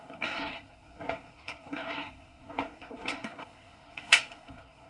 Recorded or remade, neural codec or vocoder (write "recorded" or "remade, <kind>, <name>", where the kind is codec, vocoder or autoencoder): remade, codec, SNAC